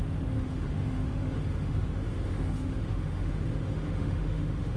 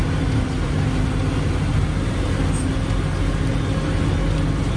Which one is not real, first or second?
first